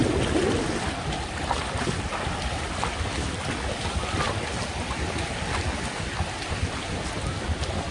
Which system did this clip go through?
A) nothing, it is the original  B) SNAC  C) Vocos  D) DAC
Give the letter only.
A